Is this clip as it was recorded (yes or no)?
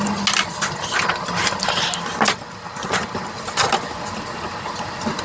yes